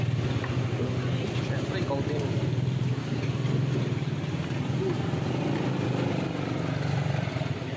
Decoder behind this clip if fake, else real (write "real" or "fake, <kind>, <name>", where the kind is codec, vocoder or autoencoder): real